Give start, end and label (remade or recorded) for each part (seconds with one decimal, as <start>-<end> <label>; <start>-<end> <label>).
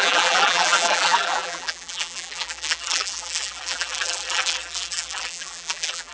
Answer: 0.0-6.1 remade